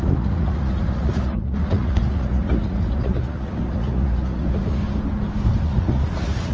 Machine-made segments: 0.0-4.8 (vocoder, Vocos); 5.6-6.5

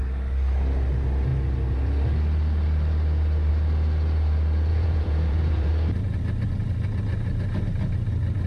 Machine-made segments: 4.7-5.7 (vocoder, Vocos)

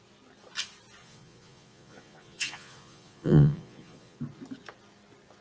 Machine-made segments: 1.0-4.2 (vocoder, Vocos)